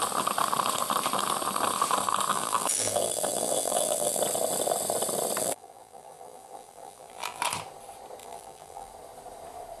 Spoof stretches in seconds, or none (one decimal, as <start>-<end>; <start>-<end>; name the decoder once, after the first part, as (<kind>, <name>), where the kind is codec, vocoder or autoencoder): 2.3-4.2 (vocoder, BigVGAN v2); 5.4-7.4; 8.2-8.9